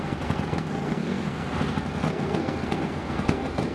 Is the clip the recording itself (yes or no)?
no